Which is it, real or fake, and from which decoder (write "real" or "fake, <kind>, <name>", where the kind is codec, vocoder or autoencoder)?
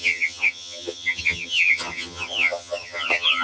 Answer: fake, vocoder, HiFi-GAN